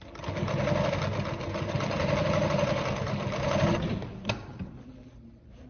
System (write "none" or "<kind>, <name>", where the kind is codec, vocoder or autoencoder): none